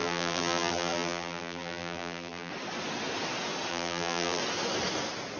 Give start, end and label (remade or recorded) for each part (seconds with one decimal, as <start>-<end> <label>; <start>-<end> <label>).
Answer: 0.0-2.5 remade; 2.5-3.7 recorded; 3.7-4.4 remade; 4.4-5.4 recorded